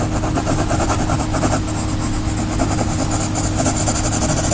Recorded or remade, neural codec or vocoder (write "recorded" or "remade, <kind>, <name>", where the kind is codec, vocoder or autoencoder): recorded